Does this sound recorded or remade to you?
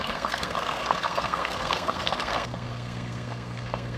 remade